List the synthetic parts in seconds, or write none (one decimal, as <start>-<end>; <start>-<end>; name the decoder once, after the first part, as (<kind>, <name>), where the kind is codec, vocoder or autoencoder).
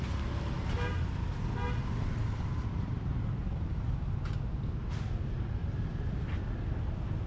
3.1-4.7 (vocoder, BigVGAN v2)